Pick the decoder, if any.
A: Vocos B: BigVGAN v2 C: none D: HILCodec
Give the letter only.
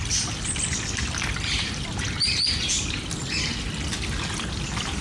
C